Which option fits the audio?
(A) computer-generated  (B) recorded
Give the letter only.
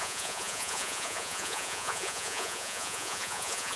A